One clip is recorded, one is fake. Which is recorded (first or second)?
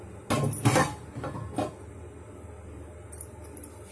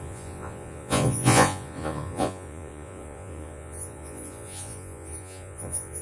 first